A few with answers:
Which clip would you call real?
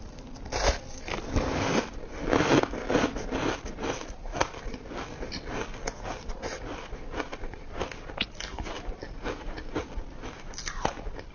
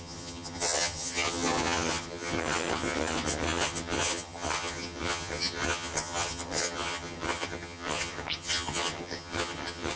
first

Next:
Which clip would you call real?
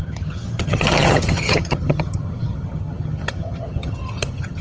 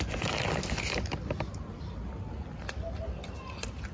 second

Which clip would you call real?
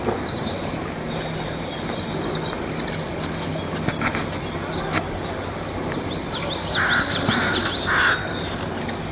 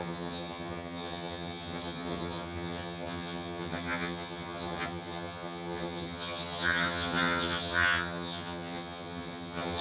first